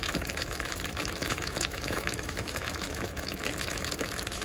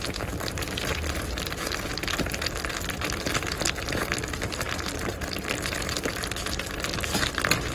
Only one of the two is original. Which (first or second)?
second